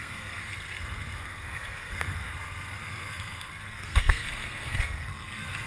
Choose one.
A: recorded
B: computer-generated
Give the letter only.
B